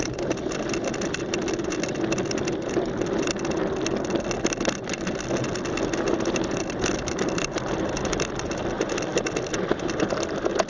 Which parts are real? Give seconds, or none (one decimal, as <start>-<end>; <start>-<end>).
0.0-10.7